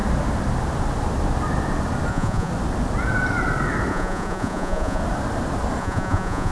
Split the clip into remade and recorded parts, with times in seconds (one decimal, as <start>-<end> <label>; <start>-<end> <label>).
0.0-2.1 recorded; 2.1-2.5 remade; 2.5-3.9 recorded; 3.9-5.0 remade; 5.0-5.8 recorded; 5.8-6.5 remade